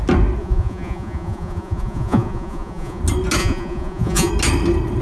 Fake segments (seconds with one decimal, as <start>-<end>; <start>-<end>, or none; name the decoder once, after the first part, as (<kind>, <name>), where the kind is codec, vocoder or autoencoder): 0.4-3.0 (vocoder, Vocos); 3.4-4.3